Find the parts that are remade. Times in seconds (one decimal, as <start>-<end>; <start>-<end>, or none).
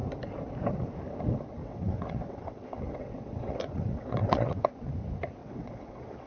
1.6-4.7; 5.4-6.3